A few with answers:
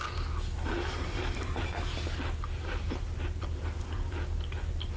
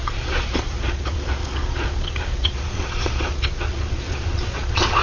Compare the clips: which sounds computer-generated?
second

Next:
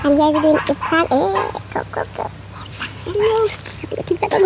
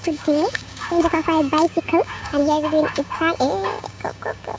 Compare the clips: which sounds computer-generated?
second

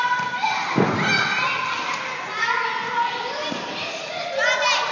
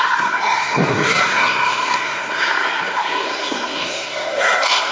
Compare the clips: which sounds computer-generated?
second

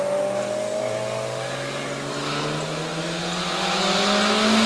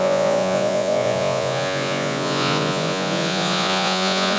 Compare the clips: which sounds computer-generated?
second